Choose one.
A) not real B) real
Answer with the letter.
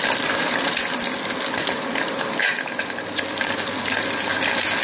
B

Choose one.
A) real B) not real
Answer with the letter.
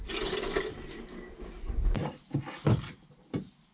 A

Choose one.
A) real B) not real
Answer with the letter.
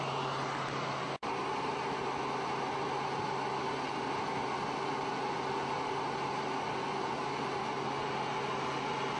A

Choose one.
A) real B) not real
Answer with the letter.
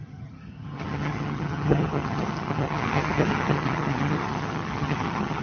B